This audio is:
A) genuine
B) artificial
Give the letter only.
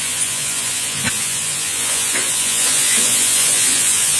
B